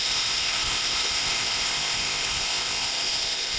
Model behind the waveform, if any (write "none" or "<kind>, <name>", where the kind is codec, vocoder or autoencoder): codec, ZipCodec